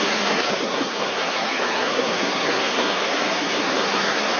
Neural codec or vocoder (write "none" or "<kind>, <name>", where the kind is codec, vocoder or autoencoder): codec, SNAC